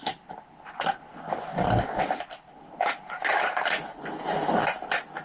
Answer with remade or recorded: recorded